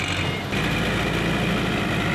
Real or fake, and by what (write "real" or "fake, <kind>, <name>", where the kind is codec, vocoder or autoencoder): real